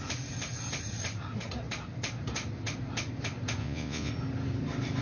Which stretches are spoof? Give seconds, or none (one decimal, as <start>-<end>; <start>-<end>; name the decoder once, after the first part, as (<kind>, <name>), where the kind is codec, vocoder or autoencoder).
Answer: 3.6-4.1 (vocoder, Vocos)